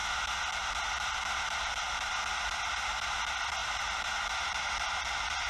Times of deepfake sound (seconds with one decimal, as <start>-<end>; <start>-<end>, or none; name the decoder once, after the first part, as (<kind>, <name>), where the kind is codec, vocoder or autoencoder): none